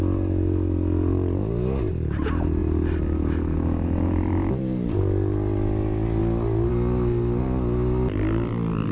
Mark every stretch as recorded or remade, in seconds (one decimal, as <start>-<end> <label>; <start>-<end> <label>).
0.0-8.9 recorded